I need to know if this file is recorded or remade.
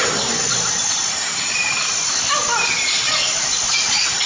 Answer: recorded